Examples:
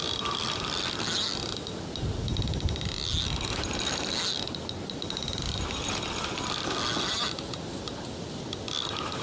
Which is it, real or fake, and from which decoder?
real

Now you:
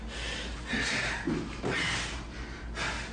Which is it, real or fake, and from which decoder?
real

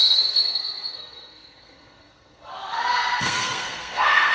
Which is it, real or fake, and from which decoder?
fake, codec, SNAC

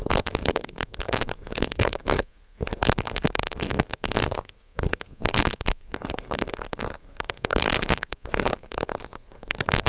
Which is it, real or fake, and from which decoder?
fake, codec, SNAC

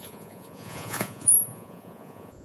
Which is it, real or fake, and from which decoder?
fake, vocoder, Vocos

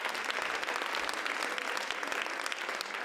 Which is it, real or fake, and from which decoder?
real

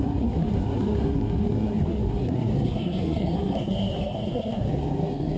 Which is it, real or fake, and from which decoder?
fake, codec, SNAC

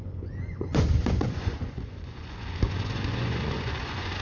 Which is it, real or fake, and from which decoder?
fake, vocoder, Vocos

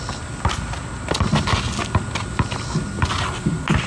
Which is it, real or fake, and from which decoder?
real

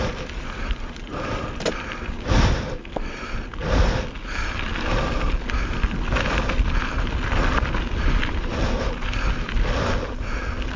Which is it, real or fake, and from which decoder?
real